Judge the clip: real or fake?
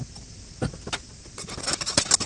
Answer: real